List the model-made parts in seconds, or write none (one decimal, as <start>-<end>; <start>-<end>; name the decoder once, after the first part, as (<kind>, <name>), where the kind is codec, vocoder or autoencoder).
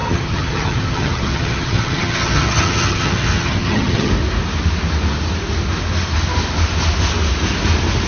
0.0-4.1 (vocoder, HiFi-GAN)